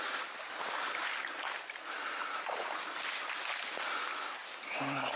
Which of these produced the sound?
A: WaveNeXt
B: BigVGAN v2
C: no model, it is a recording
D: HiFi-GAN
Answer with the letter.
C